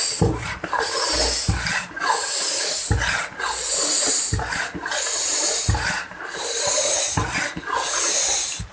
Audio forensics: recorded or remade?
recorded